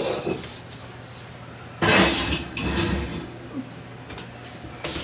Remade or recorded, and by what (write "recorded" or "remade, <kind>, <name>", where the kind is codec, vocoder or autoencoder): recorded